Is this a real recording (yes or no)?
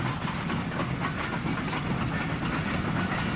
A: yes